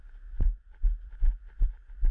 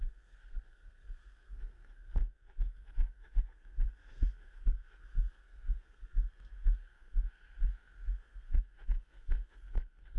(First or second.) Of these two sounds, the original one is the first